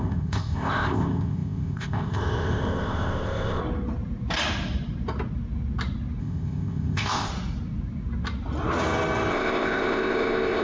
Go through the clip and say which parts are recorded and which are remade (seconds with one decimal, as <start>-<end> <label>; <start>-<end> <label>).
0.0-3.6 remade; 3.6-6.2 recorded; 6.2-7.3 remade; 7.3-9.3 recorded; 9.3-10.6 remade